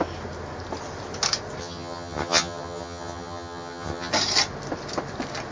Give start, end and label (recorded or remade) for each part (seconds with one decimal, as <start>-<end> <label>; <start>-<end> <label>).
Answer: 0.0-1.6 recorded; 1.6-4.1 remade; 4.1-5.5 recorded